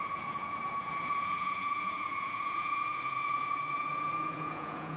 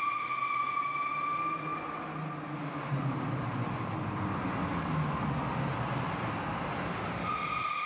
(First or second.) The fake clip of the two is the first